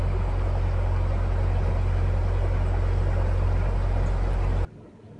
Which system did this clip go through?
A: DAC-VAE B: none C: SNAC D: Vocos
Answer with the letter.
B